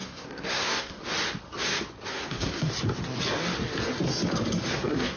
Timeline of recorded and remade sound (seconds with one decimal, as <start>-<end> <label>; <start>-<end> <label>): 0.0-1.0 remade; 1.0-2.1 recorded; 2.1-2.7 remade; 2.7-4.7 recorded; 4.7-5.2 remade

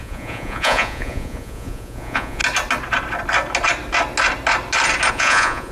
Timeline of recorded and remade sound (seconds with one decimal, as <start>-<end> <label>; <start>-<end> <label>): 0.0-2.4 remade; 2.4-5.1 recorded; 5.1-5.7 remade

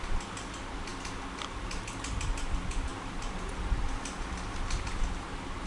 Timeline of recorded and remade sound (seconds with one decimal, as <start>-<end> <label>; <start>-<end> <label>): 0.0-2.9 recorded; 2.9-4.3 remade; 4.3-5.7 recorded